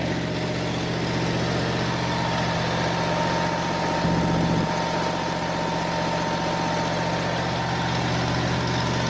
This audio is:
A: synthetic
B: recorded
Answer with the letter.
B